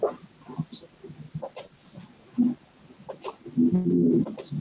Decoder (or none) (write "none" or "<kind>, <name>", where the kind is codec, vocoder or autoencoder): none